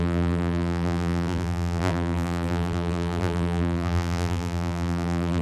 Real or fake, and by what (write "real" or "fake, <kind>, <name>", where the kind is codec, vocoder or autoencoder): fake, vocoder, BigVGAN v2